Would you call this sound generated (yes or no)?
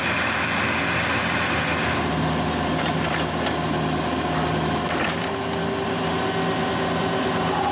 no